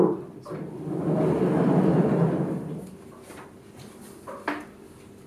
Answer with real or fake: real